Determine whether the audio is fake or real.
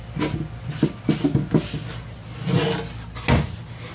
real